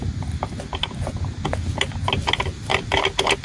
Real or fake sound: real